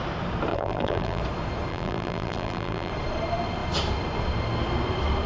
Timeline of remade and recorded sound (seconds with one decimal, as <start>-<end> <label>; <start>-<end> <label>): 0.0-0.5 recorded; 0.5-1.2 remade; 1.2-1.7 recorded; 1.7-2.9 remade; 2.9-5.3 recorded

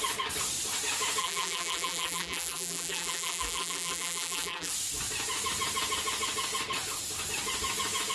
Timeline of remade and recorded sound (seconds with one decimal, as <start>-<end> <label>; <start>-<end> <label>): 0.0-1.2 recorded; 1.2-4.7 remade; 4.7-8.1 recorded

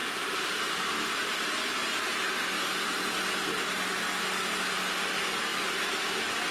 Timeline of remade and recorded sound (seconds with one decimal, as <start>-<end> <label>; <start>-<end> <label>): 0.0-0.9 remade; 0.9-6.5 recorded

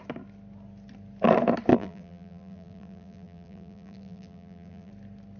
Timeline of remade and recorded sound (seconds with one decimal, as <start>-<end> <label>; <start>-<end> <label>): 0.0-1.7 recorded; 1.7-4.9 remade; 4.9-5.4 recorded